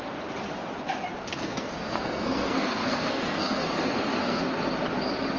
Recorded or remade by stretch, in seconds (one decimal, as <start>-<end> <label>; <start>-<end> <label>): 0.0-1.2 recorded; 1.2-4.4 remade; 4.4-5.4 recorded